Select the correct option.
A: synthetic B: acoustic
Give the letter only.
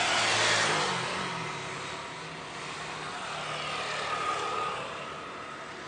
B